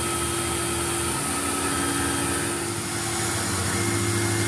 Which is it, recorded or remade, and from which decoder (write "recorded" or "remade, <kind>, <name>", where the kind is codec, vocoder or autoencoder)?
recorded